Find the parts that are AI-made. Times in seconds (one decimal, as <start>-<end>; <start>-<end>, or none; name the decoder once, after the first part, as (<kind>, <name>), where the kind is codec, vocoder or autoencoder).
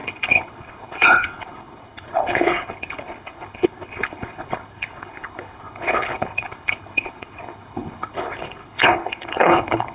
0.0-9.9 (codec, HILCodec)